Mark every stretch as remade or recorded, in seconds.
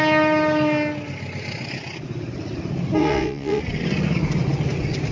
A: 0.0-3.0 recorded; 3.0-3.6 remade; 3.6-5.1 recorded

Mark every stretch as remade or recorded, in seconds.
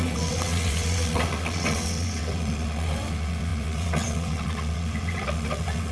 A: 0.0-5.9 remade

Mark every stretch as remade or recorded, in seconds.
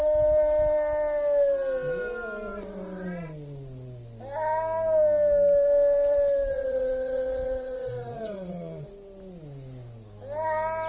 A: 0.0-6.5 recorded; 6.5-8.9 remade; 8.9-10.9 recorded